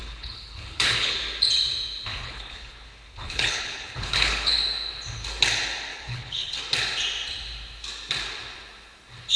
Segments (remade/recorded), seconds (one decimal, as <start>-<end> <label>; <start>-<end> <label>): 0.0-1.2 remade; 1.2-2.1 recorded; 2.1-4.6 remade; 4.6-5.9 recorded; 5.9-6.6 remade; 6.6-9.4 recorded